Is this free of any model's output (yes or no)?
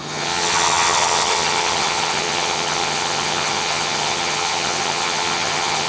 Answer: no